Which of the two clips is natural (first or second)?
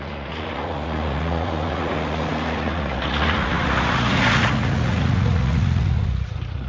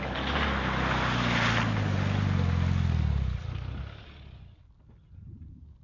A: second